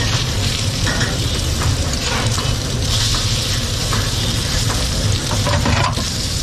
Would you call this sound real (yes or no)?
no